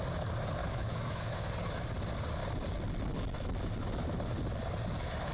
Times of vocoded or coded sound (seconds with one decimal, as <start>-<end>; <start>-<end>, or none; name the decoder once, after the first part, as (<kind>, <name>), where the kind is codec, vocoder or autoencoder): 0.6-1.5 (autoencoder, DAC-VAE)